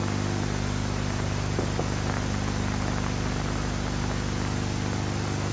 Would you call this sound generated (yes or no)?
no